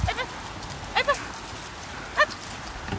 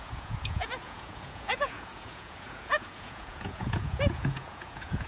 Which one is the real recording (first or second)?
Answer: first